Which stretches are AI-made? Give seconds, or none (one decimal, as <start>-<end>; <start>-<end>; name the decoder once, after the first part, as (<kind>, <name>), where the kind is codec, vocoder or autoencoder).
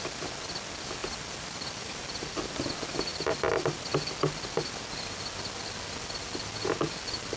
none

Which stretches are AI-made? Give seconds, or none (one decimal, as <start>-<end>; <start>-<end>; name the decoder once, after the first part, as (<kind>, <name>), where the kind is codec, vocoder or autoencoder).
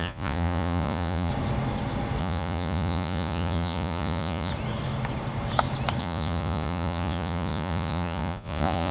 0.0-1.3 (vocoder, Vocos); 2.2-4.5; 6.0-8.9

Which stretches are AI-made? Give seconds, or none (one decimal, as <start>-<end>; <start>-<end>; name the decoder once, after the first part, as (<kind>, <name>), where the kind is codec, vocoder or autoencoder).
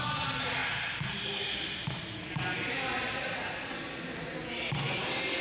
none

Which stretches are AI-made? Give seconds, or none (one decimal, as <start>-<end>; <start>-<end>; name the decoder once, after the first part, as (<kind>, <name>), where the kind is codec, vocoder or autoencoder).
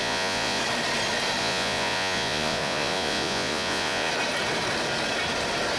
0.0-0.6 (vocoder, Vocos); 1.4-4.1